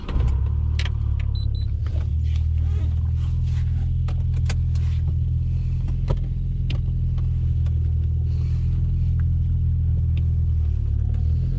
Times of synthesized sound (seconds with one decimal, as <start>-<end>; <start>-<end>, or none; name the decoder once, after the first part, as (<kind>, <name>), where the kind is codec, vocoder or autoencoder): none